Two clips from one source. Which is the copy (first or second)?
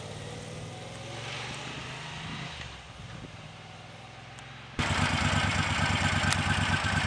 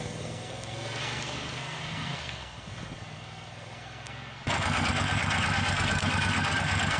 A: second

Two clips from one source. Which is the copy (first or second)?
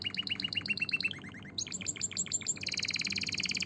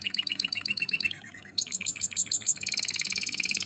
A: second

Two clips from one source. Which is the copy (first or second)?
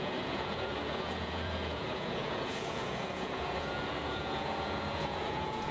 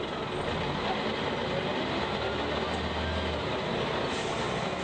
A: first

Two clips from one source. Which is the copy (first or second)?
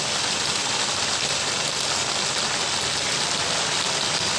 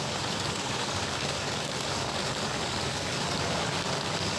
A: second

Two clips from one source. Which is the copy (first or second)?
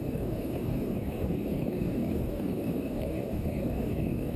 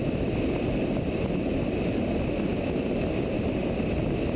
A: first